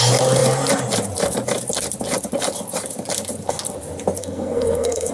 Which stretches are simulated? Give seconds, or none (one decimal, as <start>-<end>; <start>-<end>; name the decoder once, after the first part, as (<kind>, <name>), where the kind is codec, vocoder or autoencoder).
4.2-5.1 (codec, SNAC)